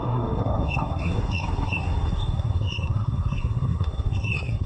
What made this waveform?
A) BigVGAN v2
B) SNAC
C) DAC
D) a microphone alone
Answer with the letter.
B